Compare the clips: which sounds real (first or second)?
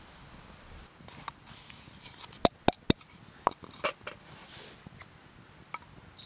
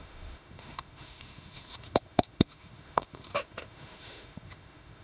first